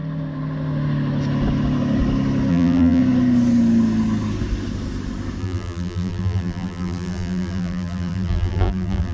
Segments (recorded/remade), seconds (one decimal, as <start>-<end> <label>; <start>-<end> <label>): 0.0-2.5 recorded; 2.5-3.0 remade; 3.0-5.4 recorded; 5.4-9.1 remade